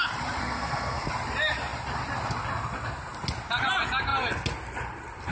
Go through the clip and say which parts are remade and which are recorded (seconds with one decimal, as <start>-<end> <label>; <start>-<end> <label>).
0.0-0.4 recorded; 0.4-1.1 remade; 1.1-5.3 recorded